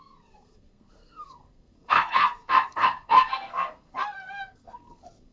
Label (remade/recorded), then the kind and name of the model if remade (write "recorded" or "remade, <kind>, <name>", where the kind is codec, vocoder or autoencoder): remade, codec, SNAC